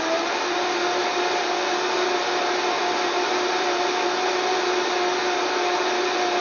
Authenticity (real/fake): real